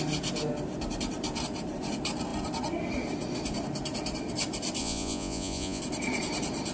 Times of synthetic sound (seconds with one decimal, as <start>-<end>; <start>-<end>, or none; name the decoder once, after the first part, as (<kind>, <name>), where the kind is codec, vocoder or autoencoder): 4.8-5.8 (vocoder, Vocos)